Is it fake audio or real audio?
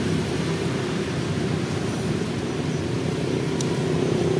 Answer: fake